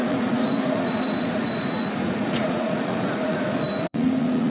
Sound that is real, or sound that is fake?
fake